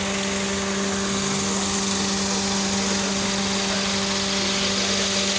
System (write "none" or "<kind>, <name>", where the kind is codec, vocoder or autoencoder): none